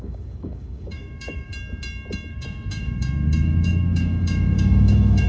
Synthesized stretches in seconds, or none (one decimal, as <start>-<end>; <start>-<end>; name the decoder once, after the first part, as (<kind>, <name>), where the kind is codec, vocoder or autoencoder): 0.0-1.5 (codec, DAC); 2.3-5.3